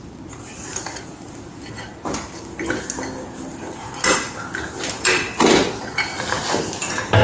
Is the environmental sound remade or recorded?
recorded